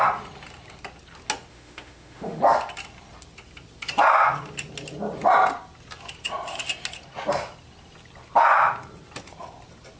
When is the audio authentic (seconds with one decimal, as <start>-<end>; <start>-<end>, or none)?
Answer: 0.0-1.5; 2.4-10.0